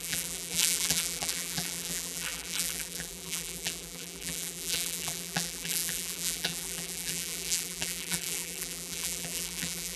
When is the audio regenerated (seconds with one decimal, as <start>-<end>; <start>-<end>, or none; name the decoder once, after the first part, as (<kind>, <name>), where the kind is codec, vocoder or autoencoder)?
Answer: 0.0-10.0 (vocoder, BigVGAN v2)